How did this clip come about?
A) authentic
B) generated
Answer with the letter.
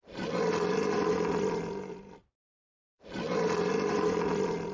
A